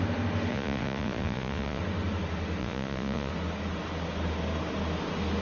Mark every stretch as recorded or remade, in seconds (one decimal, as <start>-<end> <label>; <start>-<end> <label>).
0.0-0.5 recorded; 0.5-1.8 remade; 1.8-2.6 recorded; 2.6-3.3 remade; 3.3-5.4 recorded